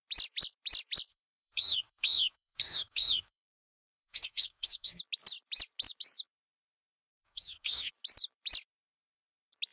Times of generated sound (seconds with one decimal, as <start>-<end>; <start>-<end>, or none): 1.1-5.0; 7.1-7.9